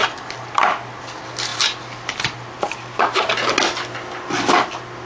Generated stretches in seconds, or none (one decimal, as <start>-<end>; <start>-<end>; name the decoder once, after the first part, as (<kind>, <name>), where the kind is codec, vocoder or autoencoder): none